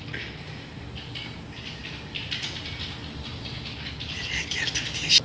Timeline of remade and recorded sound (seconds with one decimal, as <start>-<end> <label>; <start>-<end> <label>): 0.0-5.2 recorded